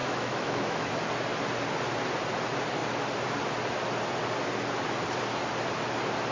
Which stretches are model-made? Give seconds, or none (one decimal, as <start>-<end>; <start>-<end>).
0.0-0.9